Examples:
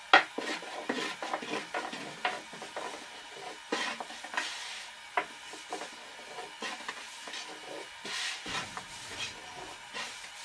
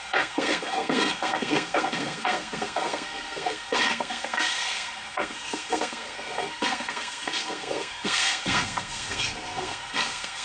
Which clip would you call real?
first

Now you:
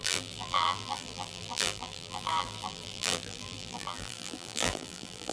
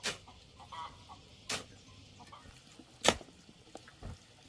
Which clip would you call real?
second